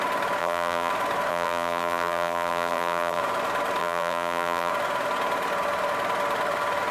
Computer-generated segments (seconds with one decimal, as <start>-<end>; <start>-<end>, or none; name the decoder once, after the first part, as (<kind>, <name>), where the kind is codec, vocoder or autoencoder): 0.4-0.9 (vocoder, BigVGAN v2); 1.3-3.2; 3.8-4.7